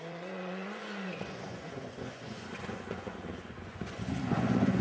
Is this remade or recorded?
remade